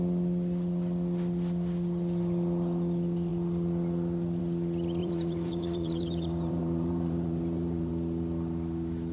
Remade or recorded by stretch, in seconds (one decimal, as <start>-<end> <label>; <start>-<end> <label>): 0.0-5.0 recorded; 5.0-7.9 remade; 7.9-9.1 recorded